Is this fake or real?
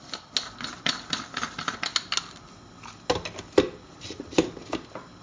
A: real